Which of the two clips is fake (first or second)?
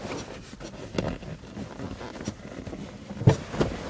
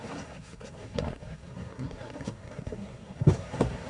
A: second